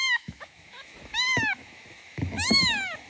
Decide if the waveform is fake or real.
fake